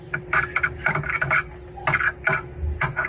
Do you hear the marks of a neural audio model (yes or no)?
no